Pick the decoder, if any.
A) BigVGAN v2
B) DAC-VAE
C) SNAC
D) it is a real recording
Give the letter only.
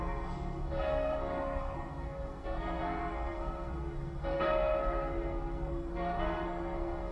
C